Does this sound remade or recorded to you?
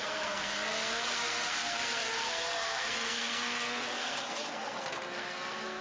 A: remade